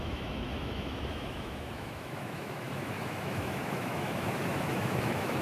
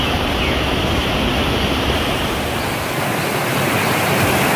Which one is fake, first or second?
first